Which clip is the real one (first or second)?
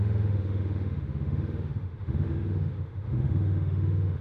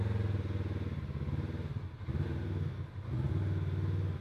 second